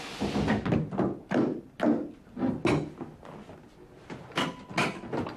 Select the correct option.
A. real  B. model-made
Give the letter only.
A